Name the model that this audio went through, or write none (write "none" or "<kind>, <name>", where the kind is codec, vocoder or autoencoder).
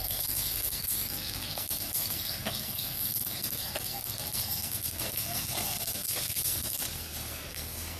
codec, SNAC